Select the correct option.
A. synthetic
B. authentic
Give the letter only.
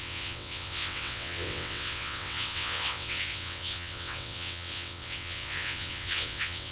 A